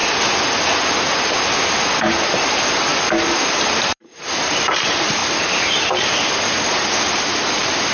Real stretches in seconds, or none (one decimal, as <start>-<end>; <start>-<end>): 0.0-1.8; 5.2-5.8